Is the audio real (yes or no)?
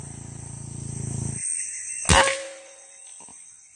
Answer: yes